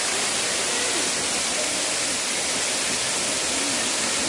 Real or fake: real